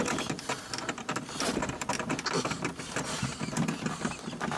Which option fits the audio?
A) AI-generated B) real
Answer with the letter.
B